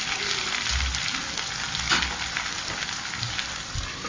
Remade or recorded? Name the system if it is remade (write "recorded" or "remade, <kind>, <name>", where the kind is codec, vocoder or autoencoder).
recorded